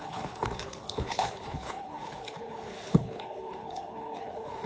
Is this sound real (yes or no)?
no